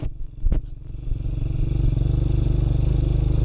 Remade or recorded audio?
recorded